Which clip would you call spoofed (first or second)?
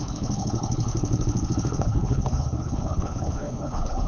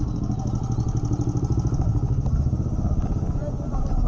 first